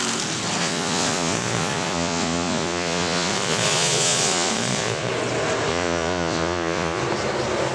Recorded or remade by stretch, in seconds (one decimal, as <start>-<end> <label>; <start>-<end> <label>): 0.0-0.6 recorded; 0.6-5.1 remade; 5.1-5.7 recorded; 5.7-7.0 remade; 7.0-7.7 recorded